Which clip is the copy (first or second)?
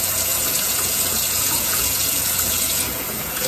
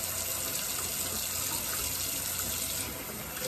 first